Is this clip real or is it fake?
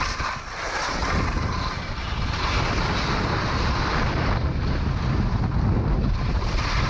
real